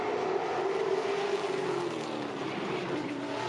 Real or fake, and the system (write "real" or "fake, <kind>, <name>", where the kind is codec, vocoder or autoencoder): real